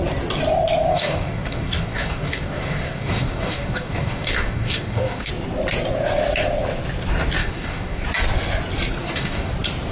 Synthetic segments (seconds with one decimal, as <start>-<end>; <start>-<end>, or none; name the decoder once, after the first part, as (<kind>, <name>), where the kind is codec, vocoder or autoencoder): 0.9-5.3 (codec, DAC); 7.4-8.0; 9.0-9.5